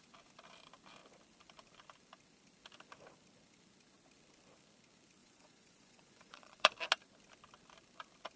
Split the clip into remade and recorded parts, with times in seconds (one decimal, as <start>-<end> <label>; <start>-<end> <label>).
0.0-5.2 recorded; 5.2-6.7 remade; 6.7-8.4 recorded